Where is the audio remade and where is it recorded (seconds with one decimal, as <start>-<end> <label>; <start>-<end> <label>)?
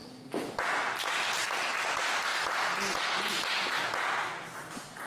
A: 0.0-5.1 recorded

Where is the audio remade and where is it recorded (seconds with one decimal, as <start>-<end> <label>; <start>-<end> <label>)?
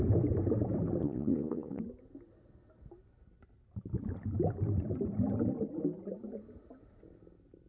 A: 0.0-1.0 recorded; 1.0-1.8 remade; 1.8-7.7 recorded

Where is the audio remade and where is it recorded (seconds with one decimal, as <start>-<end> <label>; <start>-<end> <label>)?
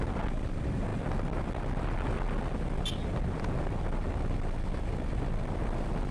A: 0.0-6.1 recorded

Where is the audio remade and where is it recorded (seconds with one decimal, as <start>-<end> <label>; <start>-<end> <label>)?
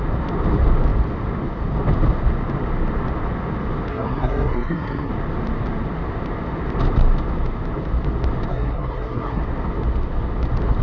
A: 0.0-3.9 recorded; 3.9-5.1 remade; 5.1-8.5 recorded; 8.5-9.4 remade; 9.4-10.8 recorded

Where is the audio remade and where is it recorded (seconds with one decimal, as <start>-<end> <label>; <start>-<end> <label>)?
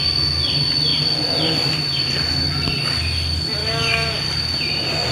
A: 0.0-3.6 recorded; 3.6-4.2 remade; 4.2-5.1 recorded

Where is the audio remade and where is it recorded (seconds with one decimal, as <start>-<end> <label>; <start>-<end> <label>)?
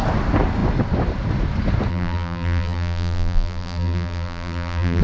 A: 0.0-1.9 recorded; 1.9-5.0 remade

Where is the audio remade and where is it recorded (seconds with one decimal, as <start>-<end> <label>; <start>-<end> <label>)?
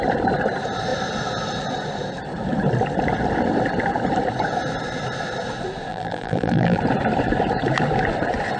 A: 0.0-5.9 recorded; 5.9-6.8 remade; 6.8-8.6 recorded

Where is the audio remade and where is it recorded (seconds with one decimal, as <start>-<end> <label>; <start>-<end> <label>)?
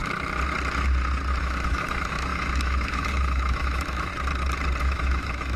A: 0.0-1.4 recorded; 1.4-4.1 remade; 4.1-4.8 recorded; 4.8-5.6 remade